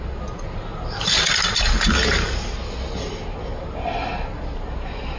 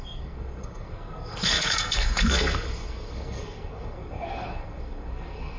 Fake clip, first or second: second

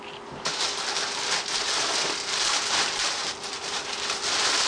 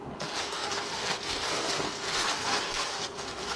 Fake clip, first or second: second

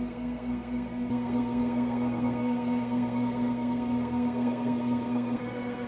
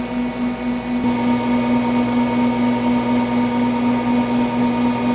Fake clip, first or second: first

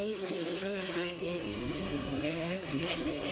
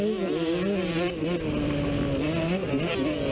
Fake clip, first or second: first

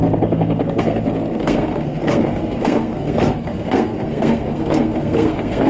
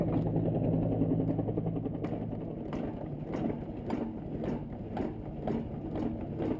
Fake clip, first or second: first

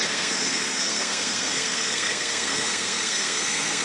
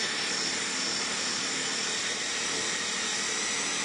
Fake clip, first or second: first